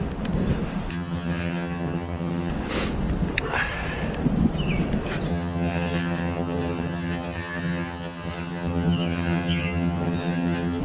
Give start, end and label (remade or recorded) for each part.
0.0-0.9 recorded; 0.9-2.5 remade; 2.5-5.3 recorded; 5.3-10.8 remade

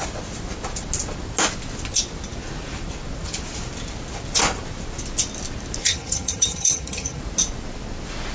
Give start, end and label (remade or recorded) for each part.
0.0-5.8 recorded; 5.8-7.2 remade; 7.2-8.3 recorded

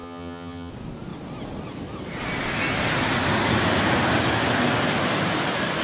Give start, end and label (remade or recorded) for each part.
0.0-0.7 remade; 0.7-5.8 recorded

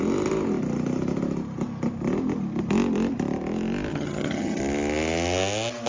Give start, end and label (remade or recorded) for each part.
0.0-3.9 recorded; 3.9-4.6 remade; 4.6-5.9 recorded

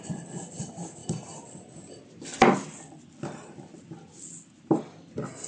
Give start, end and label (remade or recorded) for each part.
0.0-5.5 recorded

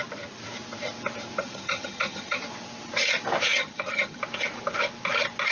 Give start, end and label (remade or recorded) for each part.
0.0-1.4 recorded; 1.4-2.4 remade; 2.4-3.5 recorded; 3.5-4.2 remade; 4.2-5.5 recorded

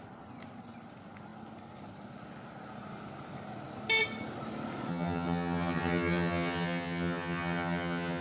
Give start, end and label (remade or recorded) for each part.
0.0-4.9 recorded; 4.9-8.2 remade